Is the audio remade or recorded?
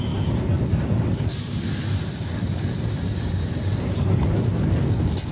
remade